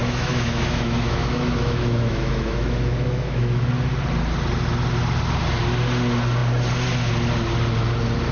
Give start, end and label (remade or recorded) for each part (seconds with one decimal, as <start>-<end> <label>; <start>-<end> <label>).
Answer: 0.0-3.7 remade; 3.7-8.3 recorded